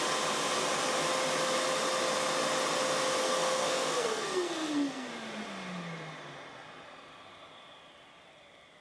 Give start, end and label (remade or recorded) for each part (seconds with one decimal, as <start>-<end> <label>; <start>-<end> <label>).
0.0-3.2 recorded; 3.2-5.1 remade; 5.1-8.8 recorded

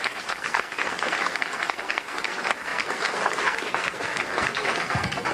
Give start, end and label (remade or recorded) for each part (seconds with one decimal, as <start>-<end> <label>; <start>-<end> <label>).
0.0-5.3 remade

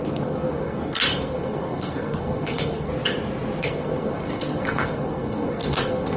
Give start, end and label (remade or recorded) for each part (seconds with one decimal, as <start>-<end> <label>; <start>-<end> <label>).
0.0-2.9 remade; 2.9-3.6 recorded; 3.6-6.2 remade

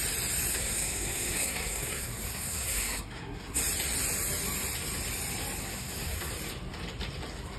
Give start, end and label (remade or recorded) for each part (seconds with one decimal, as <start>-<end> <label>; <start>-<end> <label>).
0.0-0.5 recorded; 0.5-3.6 remade; 3.6-5.6 recorded; 5.6-6.3 remade; 6.3-7.6 recorded

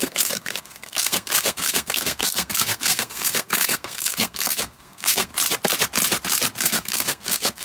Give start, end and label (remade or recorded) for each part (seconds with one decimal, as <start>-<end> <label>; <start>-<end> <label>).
0.0-5.3 remade; 5.3-6.6 recorded; 6.6-7.6 remade

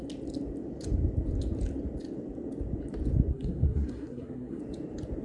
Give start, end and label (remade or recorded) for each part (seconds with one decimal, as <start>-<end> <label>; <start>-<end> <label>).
0.0-3.3 recorded; 3.3-4.6 remade; 4.6-5.2 recorded